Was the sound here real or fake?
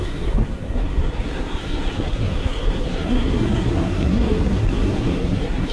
fake